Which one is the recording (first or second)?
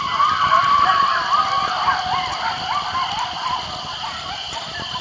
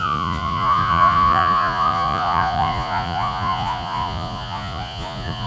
first